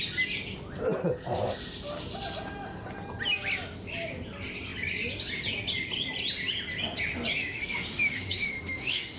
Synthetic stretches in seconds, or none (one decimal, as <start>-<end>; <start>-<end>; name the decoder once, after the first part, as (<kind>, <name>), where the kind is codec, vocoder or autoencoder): 7.4-9.2 (autoencoder, DAC-VAE)